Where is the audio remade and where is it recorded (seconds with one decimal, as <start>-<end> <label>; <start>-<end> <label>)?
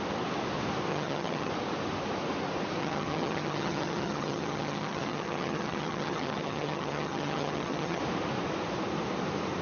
0.0-0.9 recorded; 0.9-1.5 remade; 1.5-2.8 recorded; 2.8-8.0 remade; 8.0-9.6 recorded